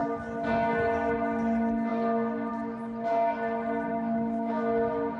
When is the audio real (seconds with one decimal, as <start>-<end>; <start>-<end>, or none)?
0.0-3.9; 4.5-5.2